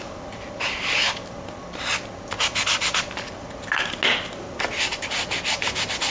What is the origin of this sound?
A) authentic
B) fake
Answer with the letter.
A